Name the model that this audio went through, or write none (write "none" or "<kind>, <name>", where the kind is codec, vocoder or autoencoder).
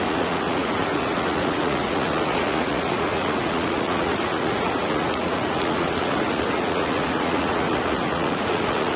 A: vocoder, Vocos